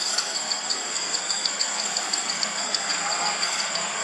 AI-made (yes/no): yes